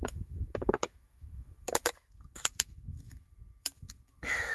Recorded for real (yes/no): no